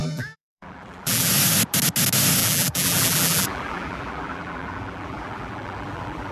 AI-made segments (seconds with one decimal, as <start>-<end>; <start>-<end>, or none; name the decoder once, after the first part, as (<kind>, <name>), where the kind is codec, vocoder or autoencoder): 0.0-1.3 (vocoder, BigVGAN v2); 2.4-6.3